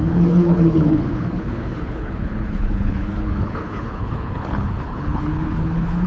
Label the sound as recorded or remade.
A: remade